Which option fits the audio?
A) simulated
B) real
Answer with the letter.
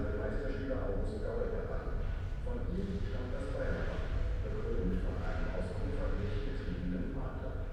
B